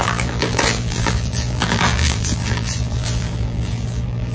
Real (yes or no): no